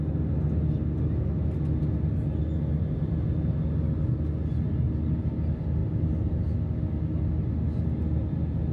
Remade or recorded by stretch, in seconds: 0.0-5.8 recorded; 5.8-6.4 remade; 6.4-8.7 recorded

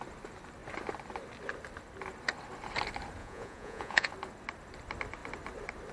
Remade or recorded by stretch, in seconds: 0.0-3.2 recorded; 3.2-4.1 remade; 4.1-5.9 recorded

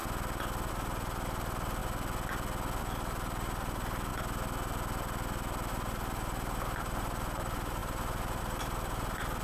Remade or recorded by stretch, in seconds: 0.0-0.7 recorded; 0.7-1.8 remade; 1.8-2.8 recorded; 2.8-4.1 remade; 4.1-5.7 recorded; 5.7-9.4 remade